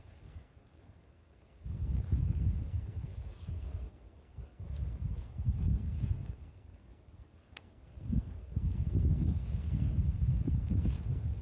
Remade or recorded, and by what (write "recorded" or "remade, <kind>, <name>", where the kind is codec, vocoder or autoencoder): remade, codec, SNAC